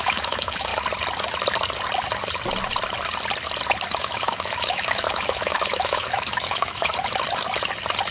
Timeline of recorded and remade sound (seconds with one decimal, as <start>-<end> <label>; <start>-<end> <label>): 0.0-0.7 remade; 0.7-4.0 recorded; 4.0-6.9 remade; 6.9-8.1 recorded